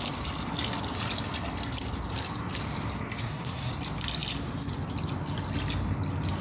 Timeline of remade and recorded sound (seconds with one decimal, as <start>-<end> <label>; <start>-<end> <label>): 0.0-3.2 recorded; 3.2-3.7 remade; 3.7-6.4 recorded